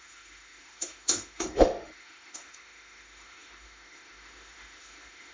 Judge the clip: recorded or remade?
remade